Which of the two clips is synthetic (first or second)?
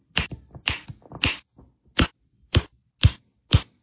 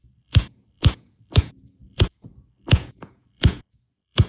second